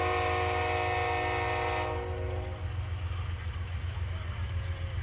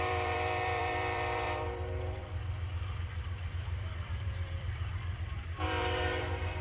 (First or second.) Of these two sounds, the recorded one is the first